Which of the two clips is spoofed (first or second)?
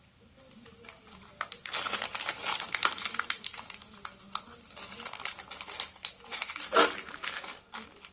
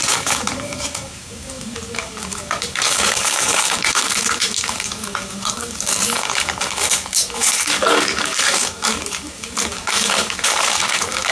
second